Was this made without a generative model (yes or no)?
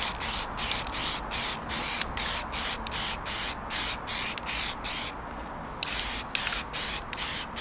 yes